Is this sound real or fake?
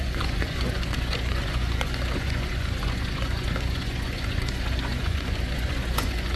fake